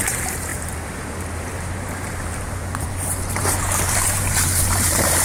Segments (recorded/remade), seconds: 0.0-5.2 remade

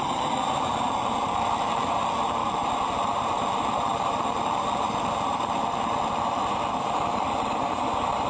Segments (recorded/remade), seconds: 0.0-8.3 remade

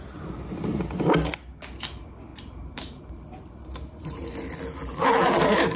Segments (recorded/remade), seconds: 0.0-2.3 recorded; 2.3-4.3 remade; 4.3-5.8 recorded

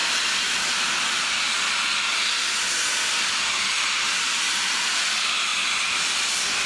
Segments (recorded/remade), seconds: 0.0-3.5 recorded; 3.5-6.7 remade

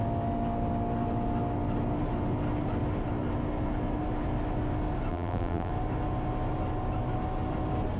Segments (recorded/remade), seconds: 0.0-5.1 recorded; 5.1-5.7 remade; 5.7-8.0 recorded

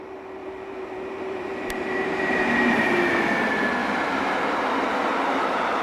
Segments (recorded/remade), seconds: 0.0-0.4 recorded; 0.4-2.8 remade; 2.8-3.8 recorded; 3.8-4.4 remade; 4.4-5.1 recorded; 5.1-5.8 remade

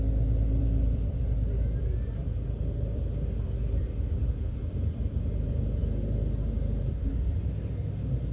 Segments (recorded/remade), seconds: 0.0-0.6 recorded; 0.6-5.0 remade; 5.0-8.3 recorded

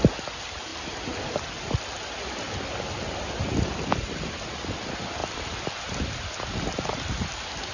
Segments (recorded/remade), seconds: 0.0-0.7 recorded; 0.7-1.8 remade; 1.8-7.7 recorded